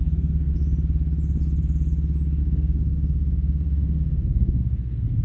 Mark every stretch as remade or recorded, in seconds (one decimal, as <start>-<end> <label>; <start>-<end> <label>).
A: 0.0-0.5 remade; 0.5-2.4 recorded; 2.4-5.2 remade